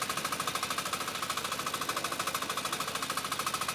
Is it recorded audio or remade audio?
recorded